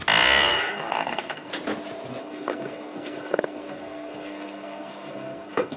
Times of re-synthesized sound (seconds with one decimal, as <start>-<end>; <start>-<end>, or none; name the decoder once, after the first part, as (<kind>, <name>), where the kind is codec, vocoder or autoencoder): 0.5-1.5 (codec, SNAC); 2.2-5.8